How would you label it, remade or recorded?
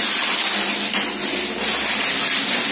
recorded